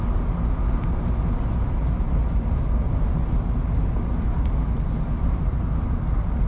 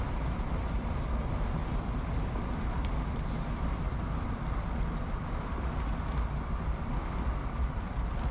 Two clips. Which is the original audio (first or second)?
first